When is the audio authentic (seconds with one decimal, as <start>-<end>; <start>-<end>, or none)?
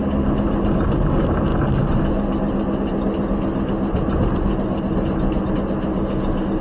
0.0-6.6